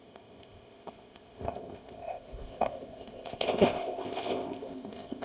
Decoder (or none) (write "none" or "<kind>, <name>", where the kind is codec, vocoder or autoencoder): codec, ZipCodec